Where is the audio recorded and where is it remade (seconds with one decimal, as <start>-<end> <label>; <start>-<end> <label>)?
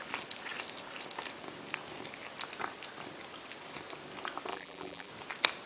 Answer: 0.0-4.5 recorded; 4.5-5.1 remade; 5.1-5.7 recorded